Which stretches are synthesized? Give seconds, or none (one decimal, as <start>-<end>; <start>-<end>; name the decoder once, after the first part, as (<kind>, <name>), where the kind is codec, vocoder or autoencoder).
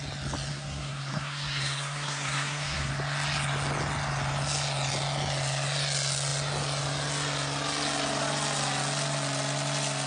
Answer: 0.5-2.9 (codec, SNAC)